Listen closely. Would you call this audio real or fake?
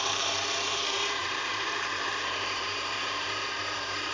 fake